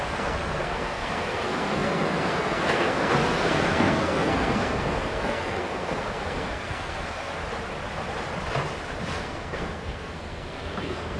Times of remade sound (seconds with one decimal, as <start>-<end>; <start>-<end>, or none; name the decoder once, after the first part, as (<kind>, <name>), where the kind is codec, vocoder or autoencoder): 0.0-7.4 (codec, SNAC); 9.1-11.2